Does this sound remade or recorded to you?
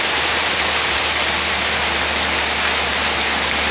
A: recorded